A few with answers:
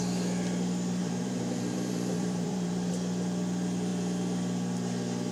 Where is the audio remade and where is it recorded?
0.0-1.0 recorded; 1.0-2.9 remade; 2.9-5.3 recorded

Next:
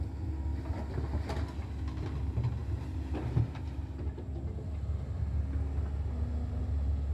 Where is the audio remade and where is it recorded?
0.0-7.1 recorded

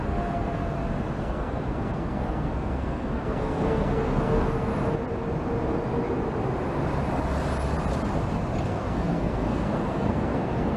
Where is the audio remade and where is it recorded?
0.0-0.6 remade; 0.6-1.2 recorded; 1.2-4.7 remade; 4.7-8.6 recorded; 8.6-10.8 remade